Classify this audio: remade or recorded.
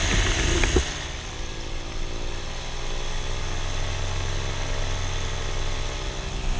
recorded